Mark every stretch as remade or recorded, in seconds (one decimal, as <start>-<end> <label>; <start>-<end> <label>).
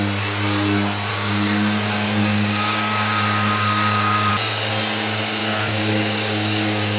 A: 0.0-1.1 recorded; 1.1-4.3 remade; 4.3-5.4 recorded; 5.4-7.0 remade